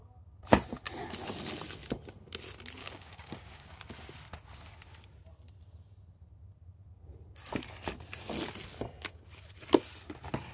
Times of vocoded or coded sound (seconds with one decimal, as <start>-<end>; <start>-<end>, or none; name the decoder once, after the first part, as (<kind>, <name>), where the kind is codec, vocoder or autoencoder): 2.8-3.8 (codec, DAC)